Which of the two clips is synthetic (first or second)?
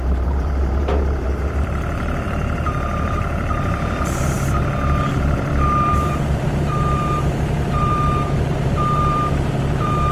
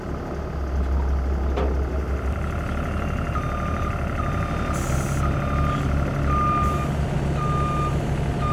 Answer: first